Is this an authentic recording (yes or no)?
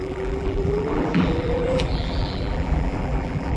no